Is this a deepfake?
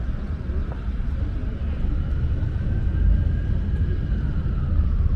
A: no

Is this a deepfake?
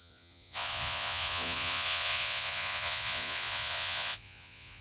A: yes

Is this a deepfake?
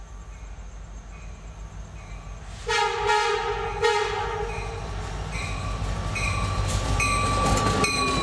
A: no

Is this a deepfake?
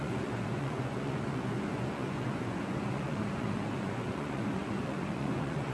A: yes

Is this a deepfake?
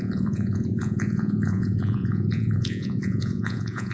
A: yes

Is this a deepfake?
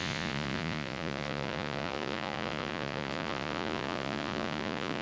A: yes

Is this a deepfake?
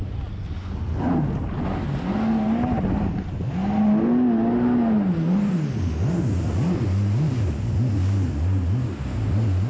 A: no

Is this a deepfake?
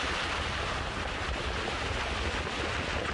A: no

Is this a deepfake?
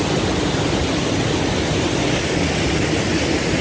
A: no